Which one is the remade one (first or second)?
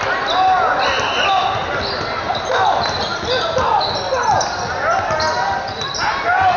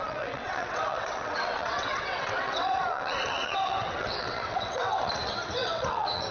second